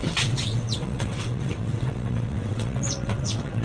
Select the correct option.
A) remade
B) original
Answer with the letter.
A